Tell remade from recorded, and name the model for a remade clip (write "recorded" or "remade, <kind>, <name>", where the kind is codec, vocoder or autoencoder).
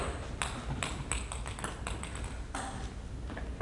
recorded